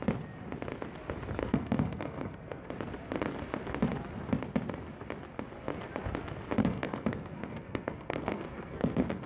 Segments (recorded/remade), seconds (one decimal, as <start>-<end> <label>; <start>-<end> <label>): 0.0-1.4 recorded; 1.4-2.7 remade; 2.7-6.6 recorded; 6.6-9.3 remade

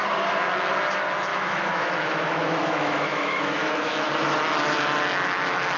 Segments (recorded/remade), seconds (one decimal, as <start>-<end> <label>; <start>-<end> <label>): 0.0-1.3 recorded; 1.3-4.1 remade; 4.1-5.8 recorded